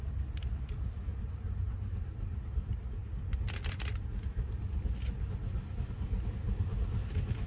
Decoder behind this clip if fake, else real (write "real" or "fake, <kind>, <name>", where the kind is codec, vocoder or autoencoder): real